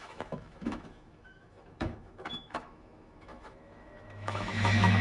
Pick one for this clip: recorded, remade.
remade